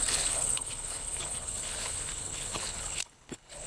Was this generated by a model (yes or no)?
yes